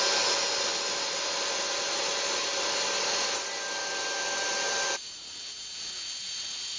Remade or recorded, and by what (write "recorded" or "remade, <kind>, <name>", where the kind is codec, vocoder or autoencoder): recorded